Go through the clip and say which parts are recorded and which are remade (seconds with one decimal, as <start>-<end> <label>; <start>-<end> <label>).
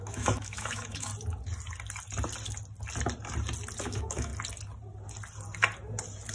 0.0-1.1 remade; 1.1-3.8 recorded; 3.8-4.3 remade; 4.3-6.3 recorded